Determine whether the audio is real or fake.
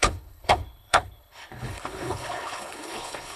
fake